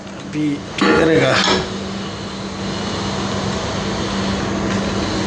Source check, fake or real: real